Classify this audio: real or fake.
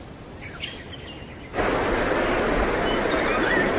real